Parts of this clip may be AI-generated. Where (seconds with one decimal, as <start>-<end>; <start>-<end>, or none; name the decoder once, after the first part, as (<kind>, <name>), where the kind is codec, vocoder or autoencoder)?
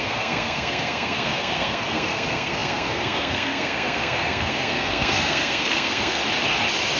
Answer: 0.0-6.2 (codec, SNAC)